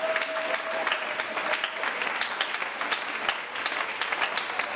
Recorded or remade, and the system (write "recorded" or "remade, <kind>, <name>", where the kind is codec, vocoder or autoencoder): recorded